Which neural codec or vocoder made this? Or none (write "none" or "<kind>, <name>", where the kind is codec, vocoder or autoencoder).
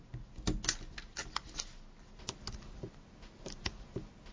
none